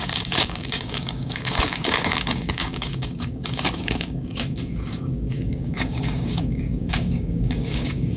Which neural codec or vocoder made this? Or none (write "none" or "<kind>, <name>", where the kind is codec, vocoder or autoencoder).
codec, DAC